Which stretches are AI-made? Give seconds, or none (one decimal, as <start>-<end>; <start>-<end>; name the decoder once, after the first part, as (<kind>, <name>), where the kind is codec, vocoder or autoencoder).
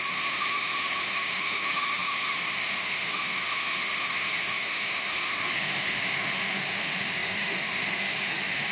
0.0-8.7 (autoencoder, DAC-VAE)